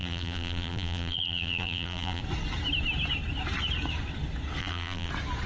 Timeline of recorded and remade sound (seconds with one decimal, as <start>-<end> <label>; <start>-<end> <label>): 0.0-2.2 remade; 2.2-4.6 recorded; 4.6-5.1 remade; 5.1-5.5 recorded

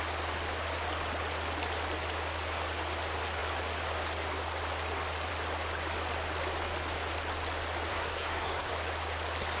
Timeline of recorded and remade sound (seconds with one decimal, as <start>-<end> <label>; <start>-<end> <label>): 0.0-7.9 recorded; 7.9-8.7 remade; 8.7-9.6 recorded

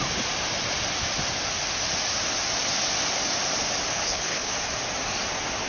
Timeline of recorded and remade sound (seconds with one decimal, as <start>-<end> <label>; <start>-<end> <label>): 0.0-3.9 recorded; 3.9-4.5 remade; 4.5-5.7 recorded

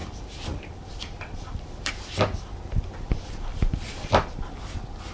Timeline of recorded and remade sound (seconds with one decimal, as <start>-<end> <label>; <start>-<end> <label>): 0.0-1.9 remade; 1.9-3.5 recorded; 3.5-4.4 remade; 4.4-5.1 recorded